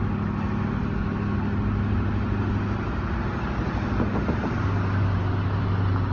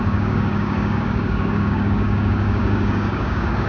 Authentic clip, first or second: first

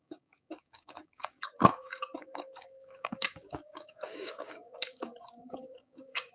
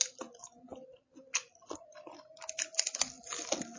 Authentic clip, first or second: second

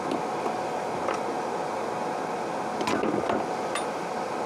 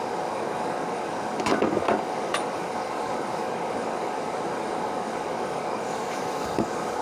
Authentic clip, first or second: first